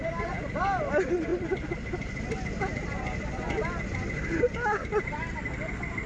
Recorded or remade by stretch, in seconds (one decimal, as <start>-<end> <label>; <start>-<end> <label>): 0.0-6.1 recorded

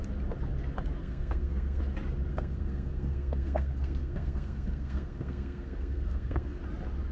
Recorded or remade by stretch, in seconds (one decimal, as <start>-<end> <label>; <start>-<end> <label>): 0.0-1.0 recorded; 1.0-1.8 remade; 1.8-2.3 recorded; 2.3-6.6 remade; 6.6-7.1 recorded

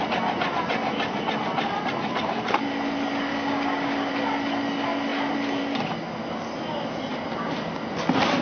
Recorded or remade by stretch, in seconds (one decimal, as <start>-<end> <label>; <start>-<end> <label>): 0.0-3.3 recorded; 3.3-4.1 remade; 4.1-8.4 recorded

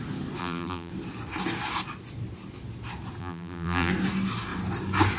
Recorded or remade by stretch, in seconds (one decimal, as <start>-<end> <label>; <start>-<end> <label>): 0.0-0.4 recorded; 0.4-0.9 remade; 0.9-3.2 recorded; 3.2-3.9 remade; 3.9-5.2 recorded

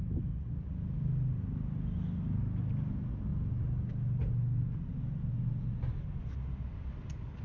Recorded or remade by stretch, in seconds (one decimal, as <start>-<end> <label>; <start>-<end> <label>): 0.0-7.4 recorded

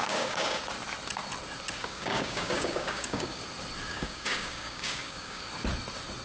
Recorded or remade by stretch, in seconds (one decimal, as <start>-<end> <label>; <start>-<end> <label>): 0.0-0.6 remade; 0.6-1.8 recorded; 1.8-3.4 remade; 3.4-3.9 recorded; 3.9-5.5 remade; 5.5-6.2 recorded

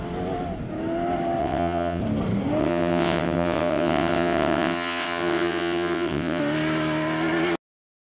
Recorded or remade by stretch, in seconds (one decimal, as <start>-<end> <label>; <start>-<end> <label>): 0.0-1.4 recorded; 1.4-2.0 remade; 2.0-2.6 recorded; 2.6-6.4 remade; 6.4-8.1 recorded